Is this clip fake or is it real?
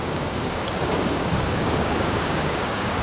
fake